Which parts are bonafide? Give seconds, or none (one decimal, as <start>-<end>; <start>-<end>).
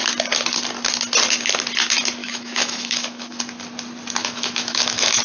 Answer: 0.0-2.2; 3.4-4.2